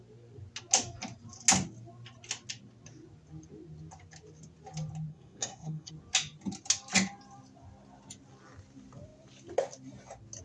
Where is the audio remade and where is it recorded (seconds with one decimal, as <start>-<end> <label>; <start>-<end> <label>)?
0.0-5.1 recorded; 5.1-5.9 remade; 5.9-10.4 recorded